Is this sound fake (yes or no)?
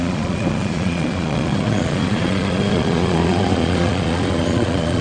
yes